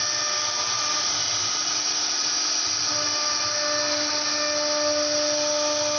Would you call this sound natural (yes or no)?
yes